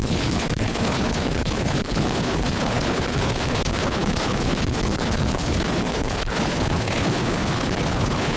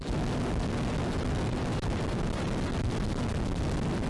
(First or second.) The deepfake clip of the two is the first